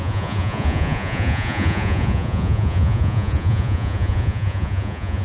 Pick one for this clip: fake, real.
fake